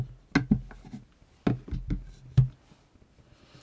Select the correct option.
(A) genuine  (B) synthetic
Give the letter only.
A